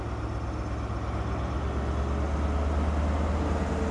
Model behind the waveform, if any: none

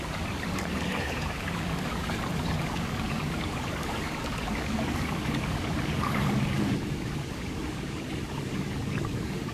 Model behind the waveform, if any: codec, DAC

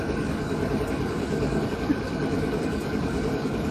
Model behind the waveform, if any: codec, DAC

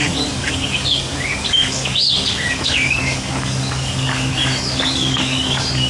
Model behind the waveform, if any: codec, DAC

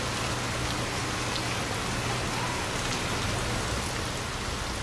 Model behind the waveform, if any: none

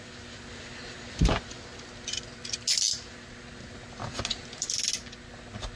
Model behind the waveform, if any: none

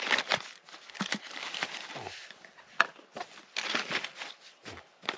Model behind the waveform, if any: none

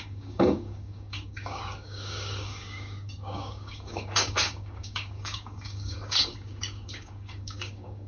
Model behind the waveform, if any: codec, DAC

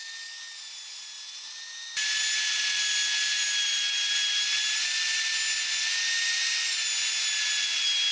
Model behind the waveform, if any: none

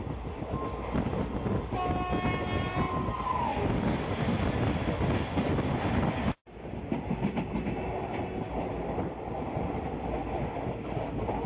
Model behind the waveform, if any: none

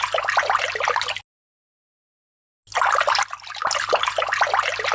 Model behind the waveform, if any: none